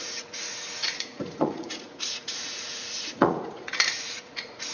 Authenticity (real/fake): fake